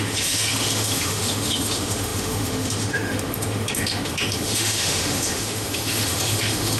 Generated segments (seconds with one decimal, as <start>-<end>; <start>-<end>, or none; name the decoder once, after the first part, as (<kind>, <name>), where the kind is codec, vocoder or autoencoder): 0.0-6.8 (autoencoder, DAC-VAE)